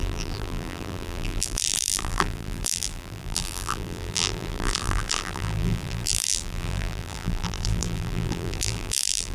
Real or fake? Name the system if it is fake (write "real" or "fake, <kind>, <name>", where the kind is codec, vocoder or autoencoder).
fake, vocoder, BigVGAN v2